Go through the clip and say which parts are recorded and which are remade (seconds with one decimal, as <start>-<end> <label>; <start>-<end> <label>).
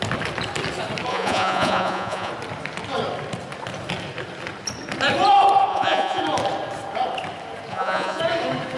0.0-1.1 recorded; 1.1-2.3 remade; 2.3-5.7 recorded; 5.7-6.2 remade; 6.2-7.7 recorded; 7.7-8.2 remade; 8.2-8.8 recorded